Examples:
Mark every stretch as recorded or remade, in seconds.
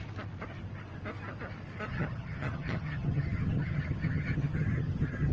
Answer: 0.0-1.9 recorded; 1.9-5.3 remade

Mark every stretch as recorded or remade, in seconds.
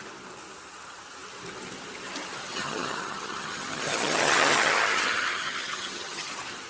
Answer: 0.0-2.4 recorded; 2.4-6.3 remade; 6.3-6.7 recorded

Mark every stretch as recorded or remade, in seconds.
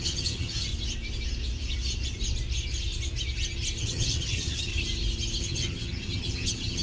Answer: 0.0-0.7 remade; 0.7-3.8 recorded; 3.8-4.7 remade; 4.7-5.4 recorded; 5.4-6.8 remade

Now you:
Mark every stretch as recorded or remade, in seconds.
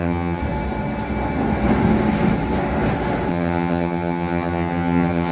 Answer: 0.0-0.4 remade; 0.4-3.3 recorded; 3.3-5.3 remade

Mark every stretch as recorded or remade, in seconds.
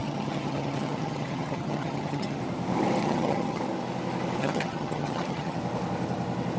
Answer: 0.0-2.4 remade; 2.4-3.0 recorded; 3.0-3.6 remade; 3.6-4.4 recorded; 4.4-5.6 remade; 5.6-6.6 recorded